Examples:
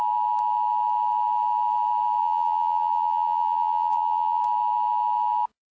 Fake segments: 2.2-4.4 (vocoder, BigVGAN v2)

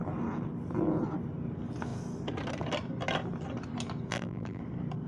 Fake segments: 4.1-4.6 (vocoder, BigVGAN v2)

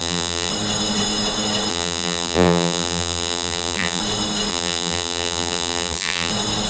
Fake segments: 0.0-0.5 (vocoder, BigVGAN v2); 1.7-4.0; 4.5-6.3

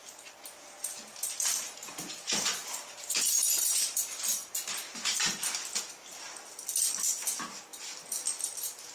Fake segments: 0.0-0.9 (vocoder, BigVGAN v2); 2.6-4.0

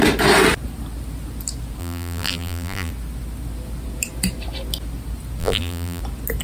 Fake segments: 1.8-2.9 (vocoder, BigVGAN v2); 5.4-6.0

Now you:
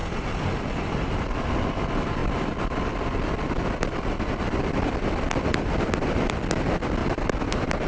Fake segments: 2.2-6.3 (vocoder, BigVGAN v2); 7.0-7.9